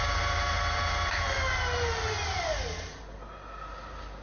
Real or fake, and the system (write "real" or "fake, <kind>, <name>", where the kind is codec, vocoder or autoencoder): real